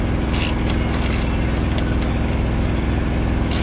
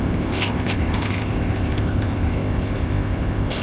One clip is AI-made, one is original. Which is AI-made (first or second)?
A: second